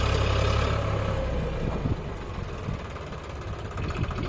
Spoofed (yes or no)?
no